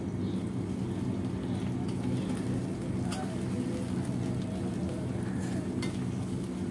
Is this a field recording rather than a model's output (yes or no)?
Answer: yes